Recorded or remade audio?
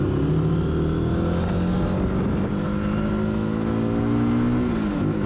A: recorded